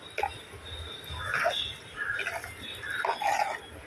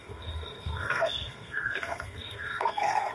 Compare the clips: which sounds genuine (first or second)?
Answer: first